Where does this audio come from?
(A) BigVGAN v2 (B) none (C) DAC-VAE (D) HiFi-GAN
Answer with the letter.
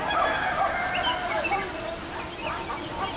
B